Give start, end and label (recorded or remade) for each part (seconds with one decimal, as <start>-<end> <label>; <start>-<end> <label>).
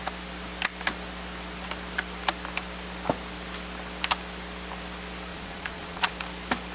0.0-5.3 recorded; 5.3-6.1 remade; 6.1-6.7 recorded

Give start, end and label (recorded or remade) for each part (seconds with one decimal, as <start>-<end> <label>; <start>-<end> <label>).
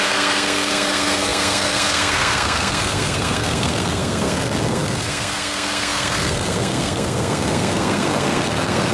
0.0-8.9 remade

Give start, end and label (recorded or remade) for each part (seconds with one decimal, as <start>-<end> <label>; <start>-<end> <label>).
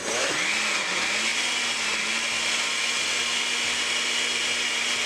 0.0-5.1 recorded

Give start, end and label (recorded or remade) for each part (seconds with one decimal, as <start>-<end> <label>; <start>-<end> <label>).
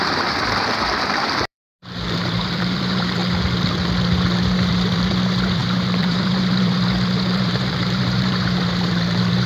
0.0-3.2 remade; 3.2-4.7 recorded; 4.7-9.5 remade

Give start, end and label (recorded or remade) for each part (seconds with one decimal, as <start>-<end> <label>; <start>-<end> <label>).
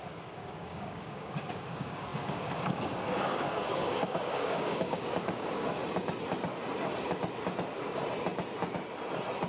0.0-5.8 remade; 5.8-9.5 recorded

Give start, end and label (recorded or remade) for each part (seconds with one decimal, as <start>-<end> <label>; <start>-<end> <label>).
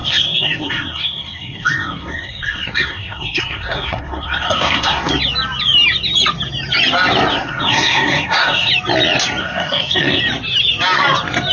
0.0-5.1 remade; 5.1-7.3 recorded; 7.3-8.7 remade; 8.7-9.4 recorded; 9.4-10.2 remade; 10.2-11.5 recorded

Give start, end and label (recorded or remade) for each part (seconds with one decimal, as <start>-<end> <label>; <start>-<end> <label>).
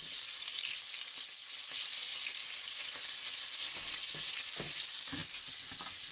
0.0-6.1 recorded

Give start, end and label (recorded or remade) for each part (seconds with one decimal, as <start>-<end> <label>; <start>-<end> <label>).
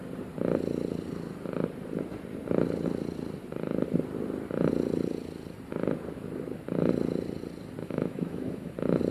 0.0-7.8 recorded; 7.8-8.7 remade; 8.7-9.1 recorded